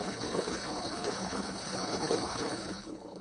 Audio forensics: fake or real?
fake